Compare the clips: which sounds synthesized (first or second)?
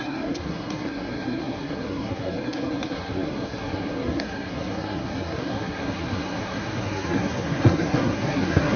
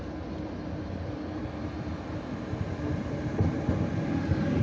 first